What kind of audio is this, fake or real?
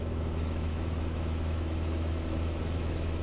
fake